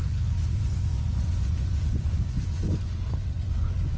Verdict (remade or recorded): remade